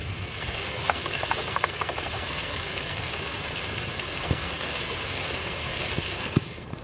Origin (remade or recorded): remade